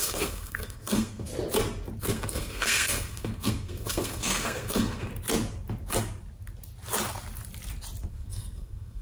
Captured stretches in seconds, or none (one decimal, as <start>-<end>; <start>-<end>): 1.3-2.0; 5.1-8.1

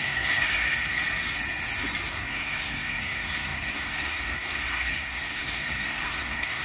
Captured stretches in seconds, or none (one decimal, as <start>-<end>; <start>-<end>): 1.0-2.1

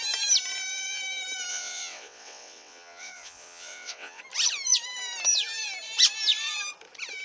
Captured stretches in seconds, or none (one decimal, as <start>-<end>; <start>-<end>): 0.0-1.5; 4.2-7.2

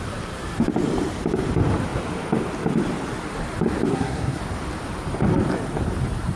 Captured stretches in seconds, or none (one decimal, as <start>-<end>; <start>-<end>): 0.0-3.9; 4.4-6.4

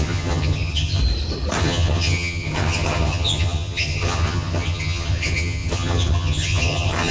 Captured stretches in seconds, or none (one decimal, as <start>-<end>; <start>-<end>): 1.0-1.6